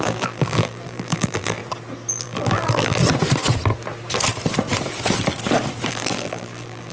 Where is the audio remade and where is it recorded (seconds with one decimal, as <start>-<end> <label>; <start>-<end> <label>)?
0.0-1.6 remade; 1.6-2.1 recorded; 2.1-3.0 remade; 3.0-5.9 recorded; 5.9-6.9 remade